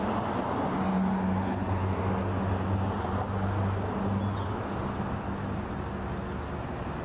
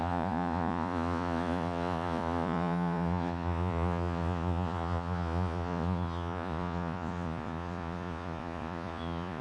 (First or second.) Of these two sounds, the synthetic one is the second